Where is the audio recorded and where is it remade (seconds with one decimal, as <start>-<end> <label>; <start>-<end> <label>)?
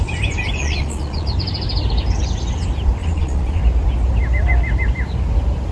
0.0-0.6 recorded; 0.6-1.3 remade; 1.3-3.0 recorded; 3.0-3.6 remade; 3.6-5.7 recorded